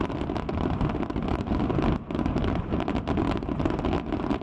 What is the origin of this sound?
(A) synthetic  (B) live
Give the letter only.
B